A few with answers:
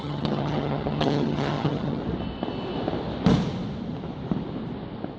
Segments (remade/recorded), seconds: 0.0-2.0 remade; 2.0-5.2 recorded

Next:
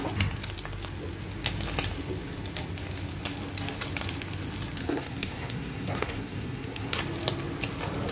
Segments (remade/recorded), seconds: 0.0-4.8 recorded; 4.8-7.0 remade; 7.0-8.1 recorded